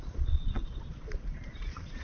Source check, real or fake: fake